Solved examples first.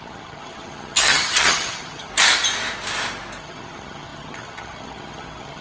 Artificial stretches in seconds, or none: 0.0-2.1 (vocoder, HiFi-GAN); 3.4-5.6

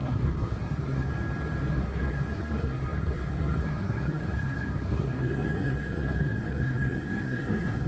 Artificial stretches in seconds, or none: 0.0-1.1 (codec, SNAC); 1.7-7.9

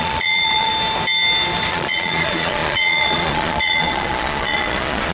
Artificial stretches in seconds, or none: 0.0-0.7 (vocoder, Vocos); 1.7-5.1